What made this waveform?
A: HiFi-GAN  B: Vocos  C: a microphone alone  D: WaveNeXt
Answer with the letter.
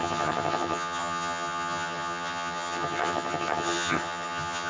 A